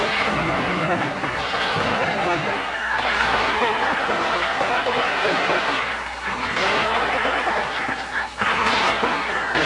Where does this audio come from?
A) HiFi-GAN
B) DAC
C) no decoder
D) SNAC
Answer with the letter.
D